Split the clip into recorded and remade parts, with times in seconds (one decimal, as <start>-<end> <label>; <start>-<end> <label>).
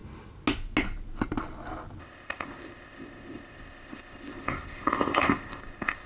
0.0-2.0 recorded; 2.0-6.1 remade